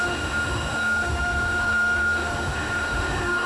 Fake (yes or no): yes